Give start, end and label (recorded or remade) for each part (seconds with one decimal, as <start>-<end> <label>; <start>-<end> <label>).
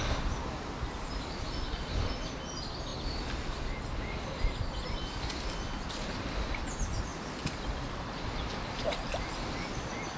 0.0-10.2 recorded